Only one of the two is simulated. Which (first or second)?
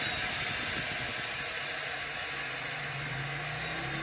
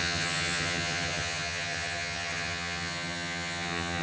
second